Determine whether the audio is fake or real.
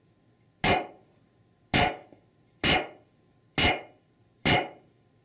real